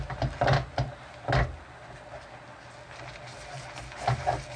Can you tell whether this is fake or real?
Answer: real